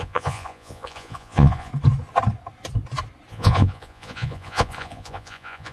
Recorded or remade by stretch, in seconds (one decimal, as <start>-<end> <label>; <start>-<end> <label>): 0.0-1.7 remade; 1.7-3.3 recorded; 3.3-5.7 remade